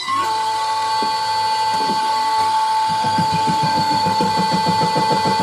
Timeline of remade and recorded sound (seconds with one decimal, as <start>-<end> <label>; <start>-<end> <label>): 0.0-0.9 remade; 0.9-2.0 recorded; 2.0-4.3 remade; 4.3-5.4 recorded